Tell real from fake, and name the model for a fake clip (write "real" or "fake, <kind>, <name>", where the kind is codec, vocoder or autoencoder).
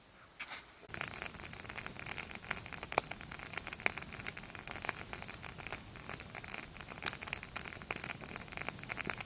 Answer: real